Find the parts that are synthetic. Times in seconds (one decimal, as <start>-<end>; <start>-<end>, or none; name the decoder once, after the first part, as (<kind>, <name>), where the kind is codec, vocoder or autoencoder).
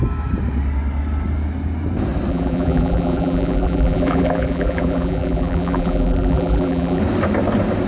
2.3-7.0 (vocoder, BigVGAN v2)